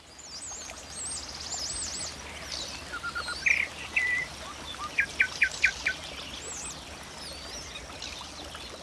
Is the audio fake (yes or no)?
no